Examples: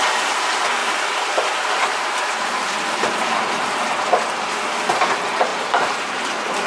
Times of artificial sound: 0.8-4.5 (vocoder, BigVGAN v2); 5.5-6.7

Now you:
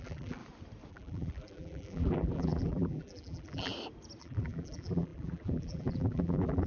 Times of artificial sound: 0.0-0.4 (vocoder, BigVGAN v2); 0.9-3.7; 4.2-6.7